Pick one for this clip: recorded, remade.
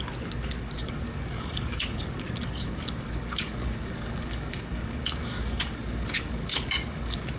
remade